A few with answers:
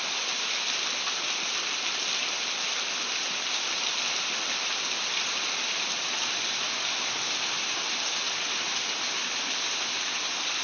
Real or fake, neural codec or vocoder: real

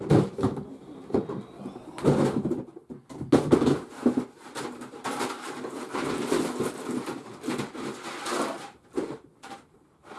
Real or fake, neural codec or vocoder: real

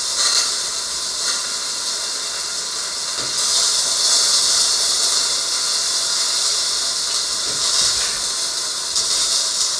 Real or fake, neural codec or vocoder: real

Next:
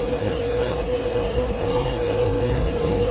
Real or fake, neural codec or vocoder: fake, codec, SNAC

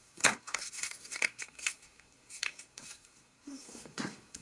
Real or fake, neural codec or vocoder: fake, codec, SNAC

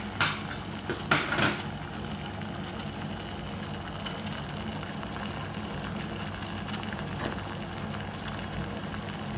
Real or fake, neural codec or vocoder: real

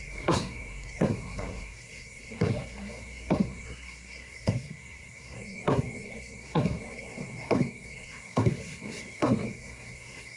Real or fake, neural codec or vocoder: fake, codec, SNAC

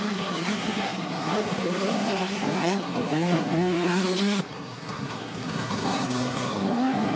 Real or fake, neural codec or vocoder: fake, codec, SNAC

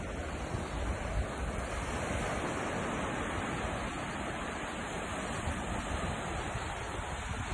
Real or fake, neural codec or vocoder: real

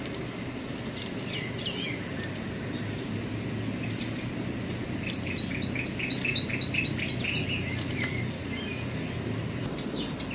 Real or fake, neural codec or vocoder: real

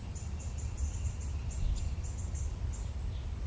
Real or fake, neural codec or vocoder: real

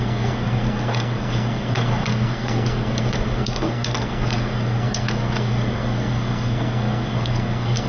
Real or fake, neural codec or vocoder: fake, codec, SNAC